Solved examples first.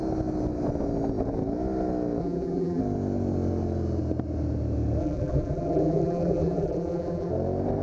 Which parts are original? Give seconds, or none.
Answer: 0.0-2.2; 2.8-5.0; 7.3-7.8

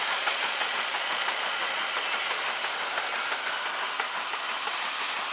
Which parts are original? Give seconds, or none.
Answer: 1.8-5.3